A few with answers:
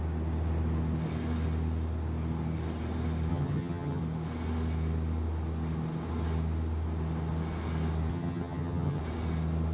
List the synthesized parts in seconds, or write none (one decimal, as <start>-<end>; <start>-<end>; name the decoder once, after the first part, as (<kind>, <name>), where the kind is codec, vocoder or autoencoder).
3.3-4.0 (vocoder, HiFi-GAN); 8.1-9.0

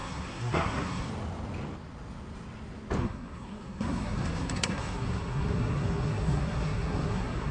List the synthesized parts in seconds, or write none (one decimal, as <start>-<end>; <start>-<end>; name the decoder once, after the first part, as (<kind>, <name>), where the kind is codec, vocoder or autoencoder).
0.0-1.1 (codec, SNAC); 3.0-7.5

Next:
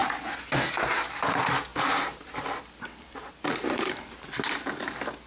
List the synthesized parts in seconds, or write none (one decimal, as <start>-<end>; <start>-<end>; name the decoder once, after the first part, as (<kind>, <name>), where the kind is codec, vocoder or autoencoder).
1.7-4.0 (vocoder, BigVGAN v2)

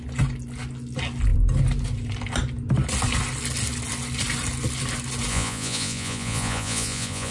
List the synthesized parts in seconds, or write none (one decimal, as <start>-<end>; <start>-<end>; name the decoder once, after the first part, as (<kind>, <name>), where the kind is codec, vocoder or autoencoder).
5.3-7.3 (vocoder, Vocos)

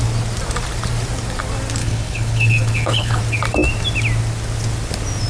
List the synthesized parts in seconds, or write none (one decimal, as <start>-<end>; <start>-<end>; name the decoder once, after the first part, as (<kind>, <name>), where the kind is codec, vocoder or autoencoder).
1.8-3.2 (codec, HILCodec)

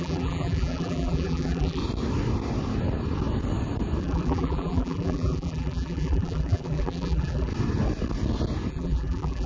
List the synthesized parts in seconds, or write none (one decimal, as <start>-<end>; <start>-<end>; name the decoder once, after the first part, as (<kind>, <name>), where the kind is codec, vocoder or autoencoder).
0.0-1.8 (vocoder, BigVGAN v2); 4.0-7.5; 8.7-9.5